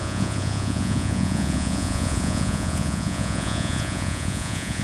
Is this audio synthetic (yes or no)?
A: yes